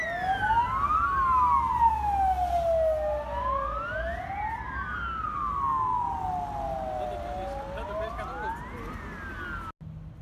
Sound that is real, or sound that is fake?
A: real